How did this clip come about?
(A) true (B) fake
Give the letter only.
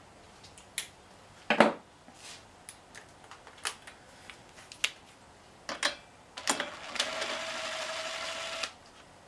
A